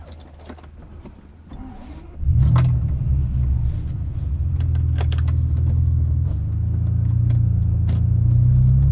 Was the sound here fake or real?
real